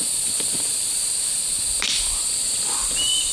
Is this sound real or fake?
real